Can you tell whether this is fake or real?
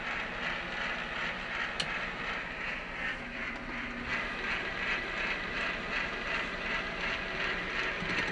real